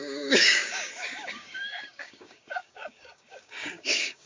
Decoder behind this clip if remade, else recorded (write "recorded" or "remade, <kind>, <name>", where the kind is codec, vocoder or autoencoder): remade, codec, DAC